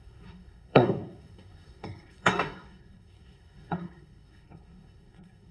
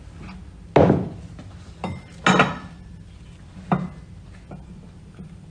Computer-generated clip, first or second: first